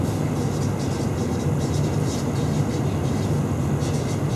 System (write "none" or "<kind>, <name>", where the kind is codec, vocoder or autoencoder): none